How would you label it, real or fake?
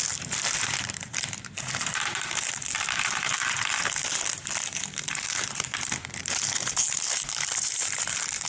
fake